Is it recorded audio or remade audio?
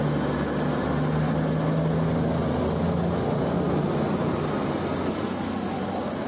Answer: recorded